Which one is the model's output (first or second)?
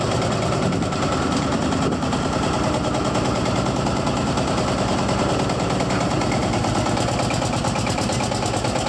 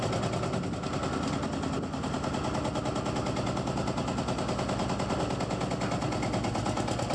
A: first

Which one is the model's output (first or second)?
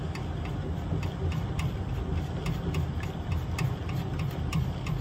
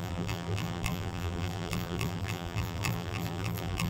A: second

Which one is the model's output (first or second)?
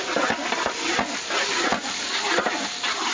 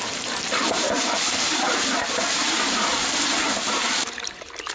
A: second